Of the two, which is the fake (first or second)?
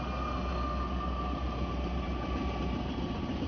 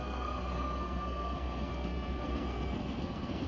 second